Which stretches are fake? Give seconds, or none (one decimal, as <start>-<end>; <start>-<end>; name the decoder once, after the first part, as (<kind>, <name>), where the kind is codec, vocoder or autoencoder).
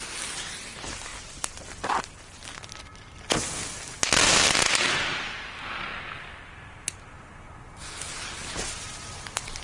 none